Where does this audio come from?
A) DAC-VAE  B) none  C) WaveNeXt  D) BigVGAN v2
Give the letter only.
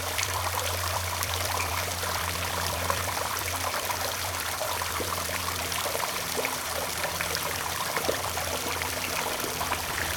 D